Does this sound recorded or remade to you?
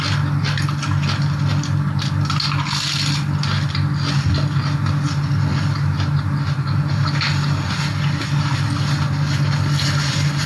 recorded